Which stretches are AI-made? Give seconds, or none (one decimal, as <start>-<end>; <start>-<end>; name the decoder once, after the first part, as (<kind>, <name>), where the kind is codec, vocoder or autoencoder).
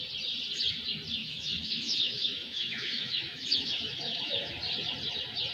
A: 1.2-4.5 (autoencoder, DAC-VAE)